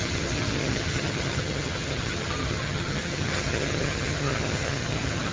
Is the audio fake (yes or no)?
yes